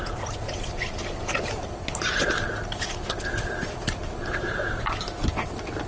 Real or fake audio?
real